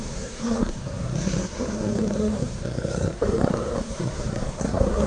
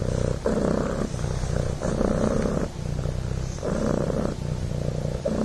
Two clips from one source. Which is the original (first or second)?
second